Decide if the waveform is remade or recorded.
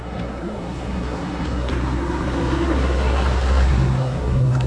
remade